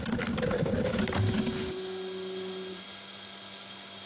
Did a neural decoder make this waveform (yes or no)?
no